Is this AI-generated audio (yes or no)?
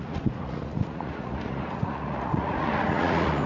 yes